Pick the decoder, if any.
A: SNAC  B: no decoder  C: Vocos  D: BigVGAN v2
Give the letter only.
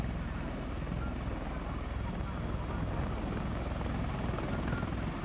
B